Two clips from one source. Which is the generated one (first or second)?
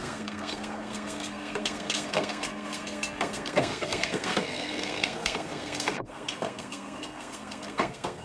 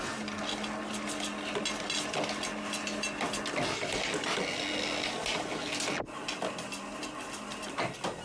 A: first